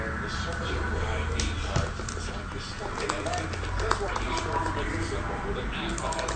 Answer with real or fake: real